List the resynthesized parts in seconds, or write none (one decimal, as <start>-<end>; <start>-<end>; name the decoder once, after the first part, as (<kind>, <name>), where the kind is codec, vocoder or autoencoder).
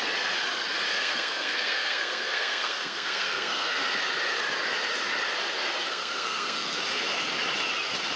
0.9-3.8 (codec, SNAC); 5.9-6.8